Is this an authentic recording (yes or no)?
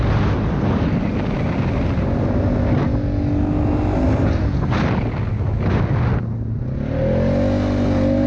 yes